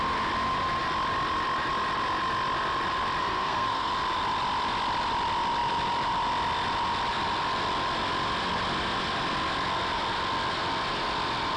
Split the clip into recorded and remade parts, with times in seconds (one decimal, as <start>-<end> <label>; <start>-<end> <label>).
0.0-3.2 recorded; 3.2-3.9 remade; 3.9-11.6 recorded